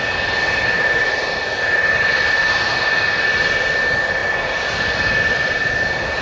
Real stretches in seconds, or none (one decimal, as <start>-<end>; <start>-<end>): 0.0-6.2